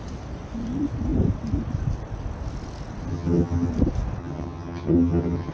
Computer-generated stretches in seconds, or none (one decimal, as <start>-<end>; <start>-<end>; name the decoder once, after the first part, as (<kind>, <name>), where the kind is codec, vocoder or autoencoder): 3.1-3.7 (vocoder, HiFi-GAN); 4.2-5.5